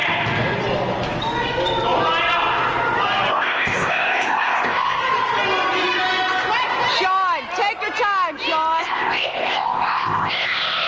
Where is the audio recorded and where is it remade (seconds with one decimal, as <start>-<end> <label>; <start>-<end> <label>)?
0.0-3.3 recorded; 3.3-5.0 remade; 5.0-8.8 recorded; 8.8-10.9 remade